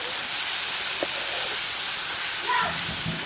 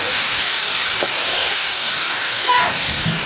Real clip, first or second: first